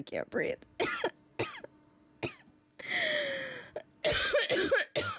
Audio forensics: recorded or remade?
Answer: recorded